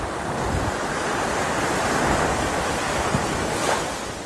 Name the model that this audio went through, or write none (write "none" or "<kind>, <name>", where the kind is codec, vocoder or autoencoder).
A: none